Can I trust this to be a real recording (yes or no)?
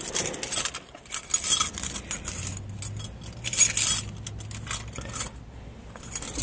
yes